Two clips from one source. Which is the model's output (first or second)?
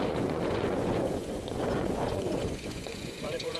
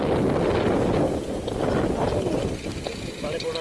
first